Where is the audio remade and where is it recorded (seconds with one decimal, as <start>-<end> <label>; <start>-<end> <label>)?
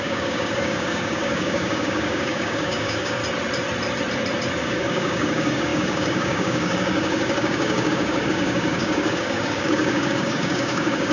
0.0-3.2 remade; 3.2-4.6 recorded; 4.6-11.1 remade